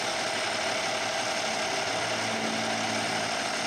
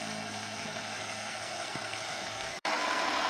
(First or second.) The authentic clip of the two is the first